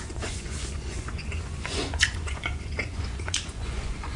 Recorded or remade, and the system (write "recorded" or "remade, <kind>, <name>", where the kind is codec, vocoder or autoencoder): remade, vocoder, Vocos